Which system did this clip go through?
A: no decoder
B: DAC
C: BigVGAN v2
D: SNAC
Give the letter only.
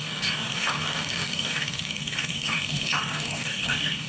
B